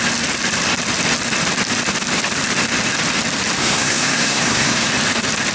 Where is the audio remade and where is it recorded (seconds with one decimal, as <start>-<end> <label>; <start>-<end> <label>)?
0.0-3.6 recorded; 3.6-4.9 remade; 4.9-5.5 recorded